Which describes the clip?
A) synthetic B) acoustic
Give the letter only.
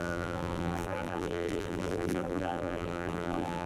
A